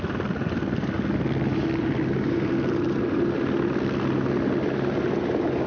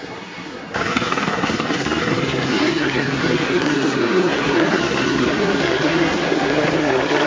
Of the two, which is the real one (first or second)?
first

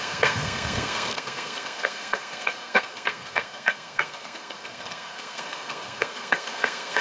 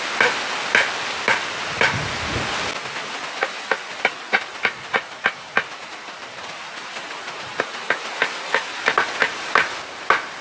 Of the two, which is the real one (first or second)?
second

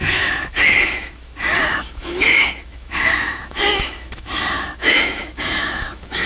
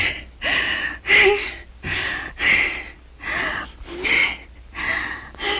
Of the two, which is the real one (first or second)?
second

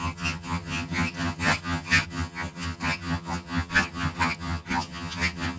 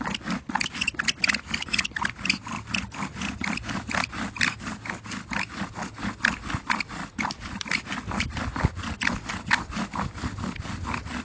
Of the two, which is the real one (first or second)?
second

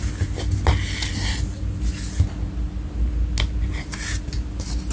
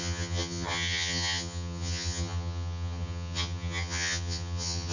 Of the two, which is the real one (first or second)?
first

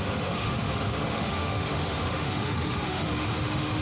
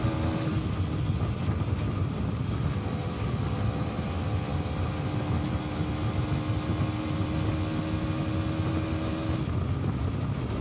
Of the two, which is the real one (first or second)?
second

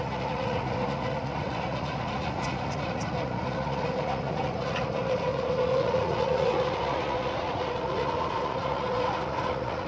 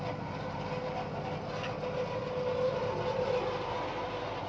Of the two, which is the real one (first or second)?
second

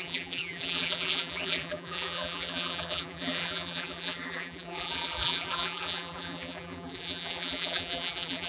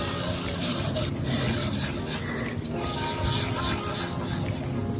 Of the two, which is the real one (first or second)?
second